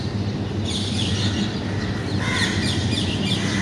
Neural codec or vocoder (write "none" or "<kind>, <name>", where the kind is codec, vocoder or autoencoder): none